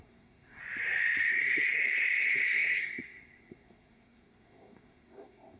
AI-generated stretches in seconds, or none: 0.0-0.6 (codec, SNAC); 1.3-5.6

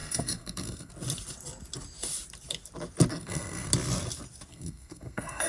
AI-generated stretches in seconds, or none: 0.0-0.9 (codec, SNAC); 3.1-3.7; 4.5-5.5

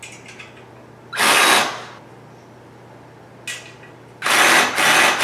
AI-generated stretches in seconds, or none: none